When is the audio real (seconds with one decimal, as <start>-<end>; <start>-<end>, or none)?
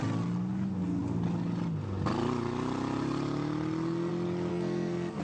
0.0-4.5